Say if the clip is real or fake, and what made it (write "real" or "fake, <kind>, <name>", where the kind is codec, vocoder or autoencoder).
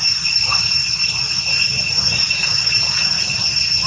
fake, vocoder, BigVGAN v2